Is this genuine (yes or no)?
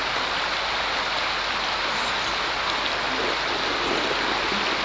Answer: yes